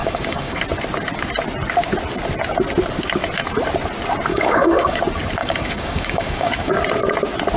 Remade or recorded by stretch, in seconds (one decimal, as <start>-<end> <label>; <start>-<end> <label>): 0.0-0.6 remade; 0.6-4.3 recorded; 4.3-5.0 remade; 5.0-5.4 recorded; 5.4-6.7 remade; 6.7-7.6 recorded

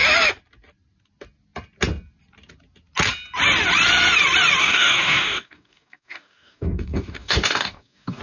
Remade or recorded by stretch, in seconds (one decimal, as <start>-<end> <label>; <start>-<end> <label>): 0.0-4.6 recorded; 4.6-8.2 remade